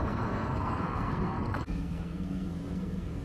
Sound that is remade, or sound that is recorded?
remade